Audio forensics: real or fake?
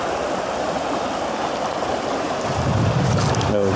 real